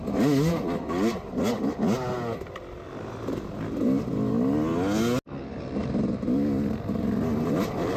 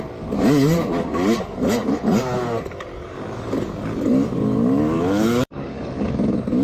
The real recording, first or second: first